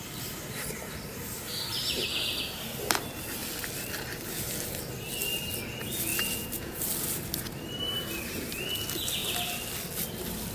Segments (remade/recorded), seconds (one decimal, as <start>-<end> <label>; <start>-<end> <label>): 0.0-6.1 recorded; 6.1-6.8 remade; 6.8-10.5 recorded